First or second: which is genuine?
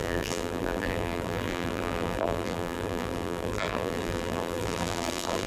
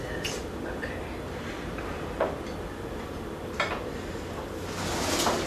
second